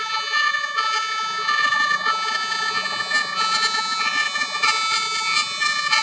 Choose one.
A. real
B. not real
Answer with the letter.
B